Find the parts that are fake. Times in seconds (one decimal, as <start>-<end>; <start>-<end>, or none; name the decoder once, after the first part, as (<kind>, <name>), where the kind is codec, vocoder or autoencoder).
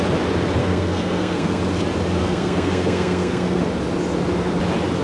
0.6-1.6 (codec, SNAC); 2.2-3.6